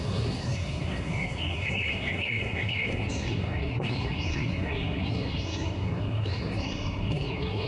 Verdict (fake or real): fake